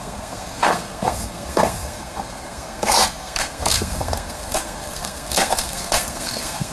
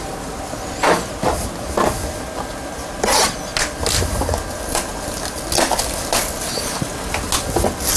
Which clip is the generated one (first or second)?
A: first